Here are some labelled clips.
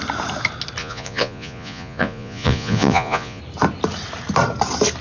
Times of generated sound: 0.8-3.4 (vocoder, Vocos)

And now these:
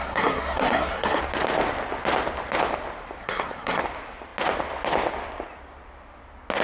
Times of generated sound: 0.0-1.2 (codec, SNAC); 3.2-3.8